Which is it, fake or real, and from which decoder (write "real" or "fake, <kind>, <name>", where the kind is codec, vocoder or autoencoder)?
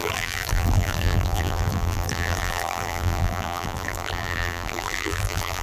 fake, vocoder, BigVGAN v2